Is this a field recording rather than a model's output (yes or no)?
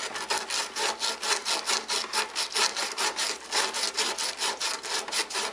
yes